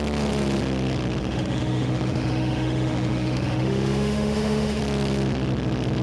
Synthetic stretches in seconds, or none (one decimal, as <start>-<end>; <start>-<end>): 1.2-4.8